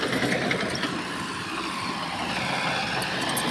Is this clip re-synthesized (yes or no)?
no